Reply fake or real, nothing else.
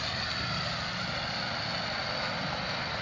real